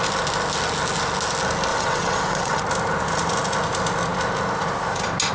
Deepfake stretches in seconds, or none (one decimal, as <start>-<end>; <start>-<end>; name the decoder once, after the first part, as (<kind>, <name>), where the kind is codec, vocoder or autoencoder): 1.7-2.6 (vocoder, WaveNeXt)

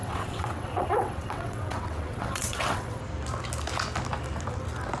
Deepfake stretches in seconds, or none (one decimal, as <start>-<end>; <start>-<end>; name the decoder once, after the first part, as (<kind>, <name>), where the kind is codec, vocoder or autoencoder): 0.0-3.0 (vocoder, WaveNeXt)